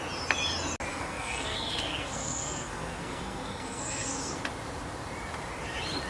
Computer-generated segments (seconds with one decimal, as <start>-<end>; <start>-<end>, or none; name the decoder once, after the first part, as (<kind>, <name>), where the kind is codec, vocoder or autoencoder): 0.9-4.4 (codec, SNAC)